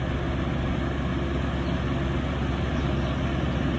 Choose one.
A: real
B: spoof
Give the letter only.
A